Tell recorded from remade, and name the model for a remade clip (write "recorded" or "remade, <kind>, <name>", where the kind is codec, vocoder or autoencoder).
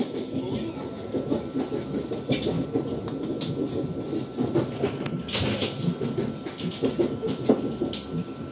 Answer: recorded